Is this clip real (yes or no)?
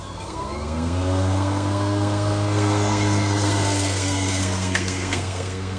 no